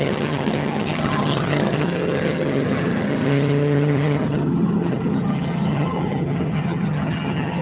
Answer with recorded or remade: remade